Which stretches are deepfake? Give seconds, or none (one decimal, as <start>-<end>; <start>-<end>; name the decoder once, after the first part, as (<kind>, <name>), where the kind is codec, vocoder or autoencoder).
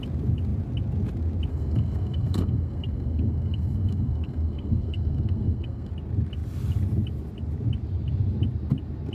1.5-5.9 (codec, SNAC)